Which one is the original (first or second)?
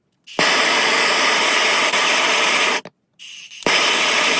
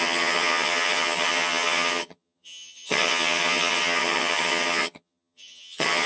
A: first